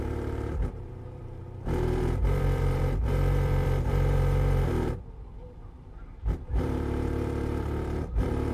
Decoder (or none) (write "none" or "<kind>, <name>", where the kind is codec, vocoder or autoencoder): vocoder, BigVGAN v2